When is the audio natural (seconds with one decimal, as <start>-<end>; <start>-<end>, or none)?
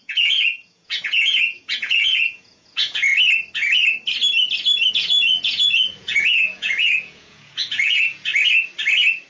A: 3.1-4.9; 8.3-9.3